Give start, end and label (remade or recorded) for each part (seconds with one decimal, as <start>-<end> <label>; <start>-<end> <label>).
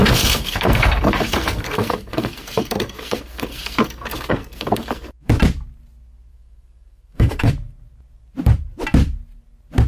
0.0-5.3 remade; 5.3-6.3 recorded; 6.3-7.5 remade; 7.5-9.9 recorded